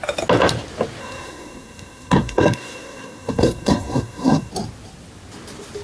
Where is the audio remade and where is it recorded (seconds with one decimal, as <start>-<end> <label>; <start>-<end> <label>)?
0.0-1.0 recorded; 1.0-4.5 remade; 4.5-5.8 recorded